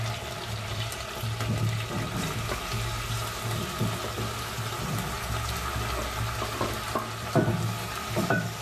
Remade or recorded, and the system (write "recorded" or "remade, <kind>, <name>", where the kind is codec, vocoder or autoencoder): recorded